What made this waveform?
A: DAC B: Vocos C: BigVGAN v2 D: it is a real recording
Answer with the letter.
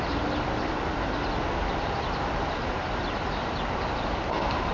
D